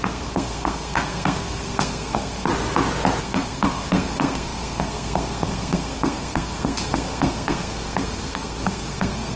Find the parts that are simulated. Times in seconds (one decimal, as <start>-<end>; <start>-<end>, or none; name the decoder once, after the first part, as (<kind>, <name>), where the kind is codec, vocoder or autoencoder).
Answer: 0.0-2.5 (codec, SNAC); 3.2-9.4